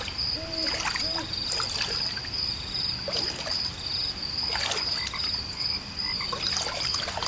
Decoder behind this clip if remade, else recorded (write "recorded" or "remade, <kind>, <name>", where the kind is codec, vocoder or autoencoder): recorded